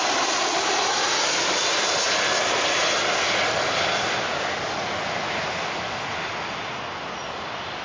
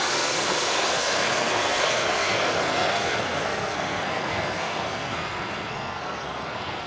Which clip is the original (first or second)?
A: first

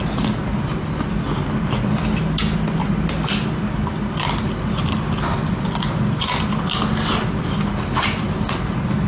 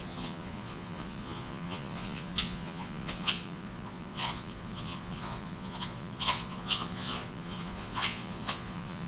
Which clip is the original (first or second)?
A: first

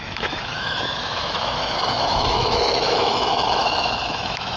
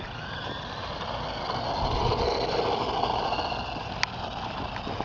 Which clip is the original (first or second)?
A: second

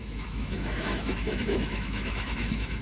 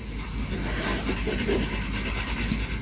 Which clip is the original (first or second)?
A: second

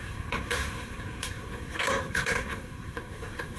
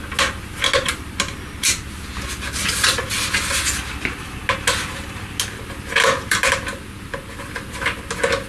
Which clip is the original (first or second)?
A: second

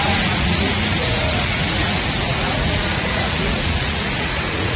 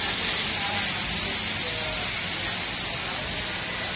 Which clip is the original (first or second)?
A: second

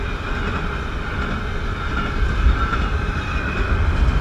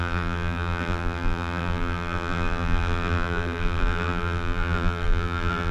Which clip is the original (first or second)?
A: first